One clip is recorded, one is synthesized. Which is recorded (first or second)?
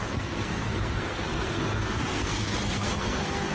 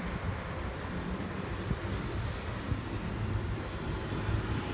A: second